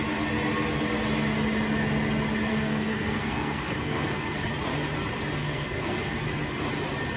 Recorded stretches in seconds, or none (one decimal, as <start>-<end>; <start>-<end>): 0.0-2.5; 4.5-5.4; 6.2-7.2